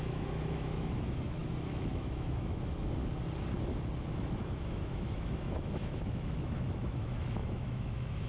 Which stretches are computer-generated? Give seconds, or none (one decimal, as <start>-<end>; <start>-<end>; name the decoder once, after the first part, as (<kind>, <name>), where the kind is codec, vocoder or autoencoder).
0.0-3.0 (autoencoder, DAC-VAE); 4.0-8.3